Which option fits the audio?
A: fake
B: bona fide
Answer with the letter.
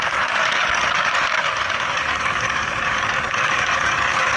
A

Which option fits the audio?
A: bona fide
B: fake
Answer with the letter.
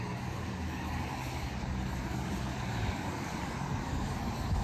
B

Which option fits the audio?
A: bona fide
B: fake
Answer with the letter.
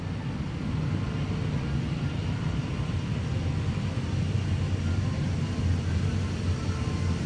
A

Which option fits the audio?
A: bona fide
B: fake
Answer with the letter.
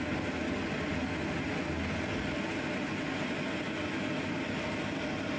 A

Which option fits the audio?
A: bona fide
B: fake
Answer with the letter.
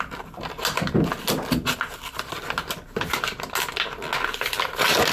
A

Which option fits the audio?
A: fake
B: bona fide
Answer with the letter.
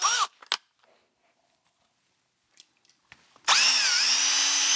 B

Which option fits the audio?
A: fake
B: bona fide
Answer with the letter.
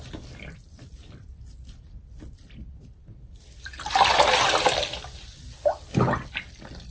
B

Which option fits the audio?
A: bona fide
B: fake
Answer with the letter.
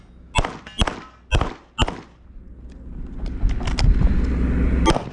A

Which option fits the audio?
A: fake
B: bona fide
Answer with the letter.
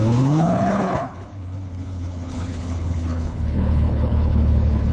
A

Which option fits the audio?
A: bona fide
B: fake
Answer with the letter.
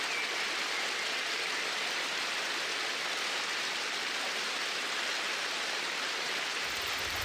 A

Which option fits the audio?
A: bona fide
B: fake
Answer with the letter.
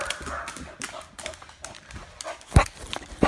A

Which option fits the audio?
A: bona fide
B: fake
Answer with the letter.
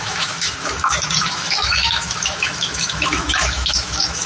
B